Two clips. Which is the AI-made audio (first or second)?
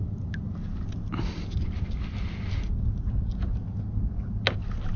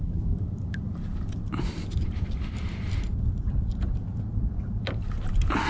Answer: second